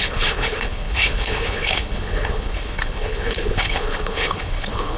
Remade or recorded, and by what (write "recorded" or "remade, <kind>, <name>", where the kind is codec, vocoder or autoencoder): remade, codec, HILCodec